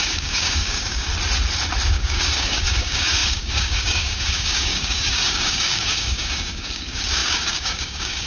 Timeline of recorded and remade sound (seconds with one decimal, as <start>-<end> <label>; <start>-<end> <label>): 0.0-1.1 remade; 1.1-1.9 recorded; 1.9-8.3 remade

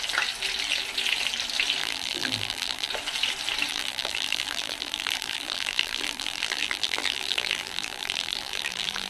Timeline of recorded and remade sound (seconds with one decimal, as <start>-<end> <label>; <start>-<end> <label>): 0.0-1.8 recorded; 1.8-2.9 remade; 2.9-3.7 recorded; 3.7-9.1 remade

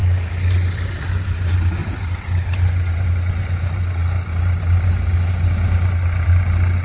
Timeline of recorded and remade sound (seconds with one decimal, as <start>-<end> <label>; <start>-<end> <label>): 0.0-1.8 recorded; 1.8-3.1 remade; 3.1-6.8 recorded

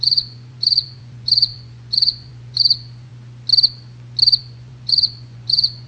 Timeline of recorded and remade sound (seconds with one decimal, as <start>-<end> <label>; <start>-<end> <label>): 0.0-3.1 remade; 3.1-4.4 recorded; 4.4-5.9 remade

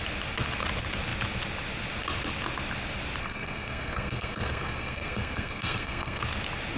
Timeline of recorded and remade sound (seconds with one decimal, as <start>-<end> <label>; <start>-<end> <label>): 0.0-3.2 recorded; 3.2-6.2 remade; 6.2-6.8 recorded

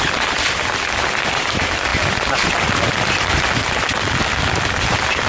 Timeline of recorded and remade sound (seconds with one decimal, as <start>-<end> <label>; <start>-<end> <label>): 0.0-5.3 recorded

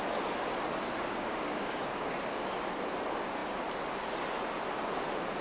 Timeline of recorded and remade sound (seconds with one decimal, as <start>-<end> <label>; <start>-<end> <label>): 0.0-1.0 recorded; 1.0-2.1 remade; 2.1-5.4 recorded

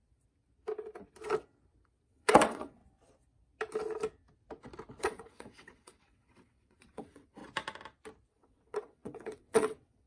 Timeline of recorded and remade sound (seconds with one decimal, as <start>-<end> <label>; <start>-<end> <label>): 0.0-2.1 recorded; 2.1-2.8 remade; 2.8-5.0 recorded; 5.0-7.4 remade; 7.4-8.3 recorded; 8.3-10.1 remade